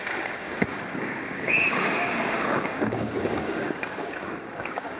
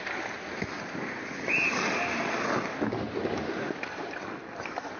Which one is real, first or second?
second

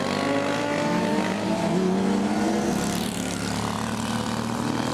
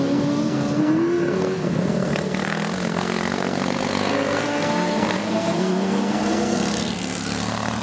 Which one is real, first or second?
first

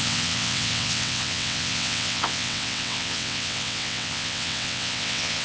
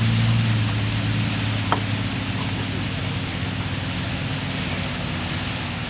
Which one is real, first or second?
second